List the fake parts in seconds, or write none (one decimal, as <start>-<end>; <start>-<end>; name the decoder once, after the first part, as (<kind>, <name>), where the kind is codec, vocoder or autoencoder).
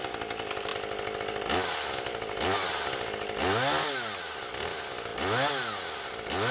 none